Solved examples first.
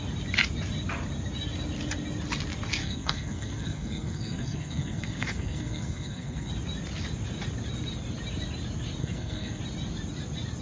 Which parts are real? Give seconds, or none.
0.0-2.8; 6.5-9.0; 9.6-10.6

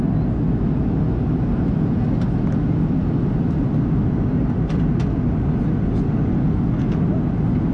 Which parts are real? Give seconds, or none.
0.0-6.4; 6.9-7.7

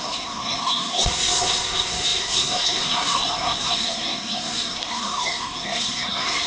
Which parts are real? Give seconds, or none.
none

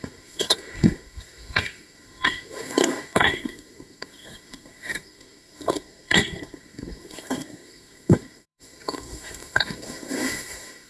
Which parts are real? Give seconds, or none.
none

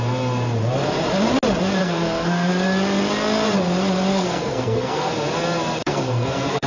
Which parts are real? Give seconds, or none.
0.0-1.8; 2.5-4.1; 5.1-5.8

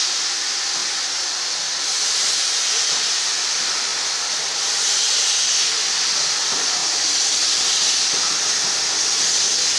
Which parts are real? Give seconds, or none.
0.0-9.8